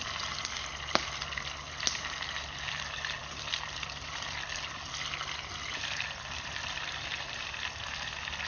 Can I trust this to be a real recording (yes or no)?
no